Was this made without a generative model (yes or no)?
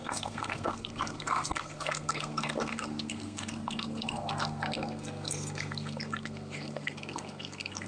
no